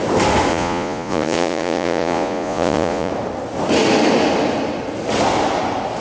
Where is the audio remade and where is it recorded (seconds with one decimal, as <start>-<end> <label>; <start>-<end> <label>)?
0.0-0.5 recorded; 0.5-3.1 remade; 3.1-6.0 recorded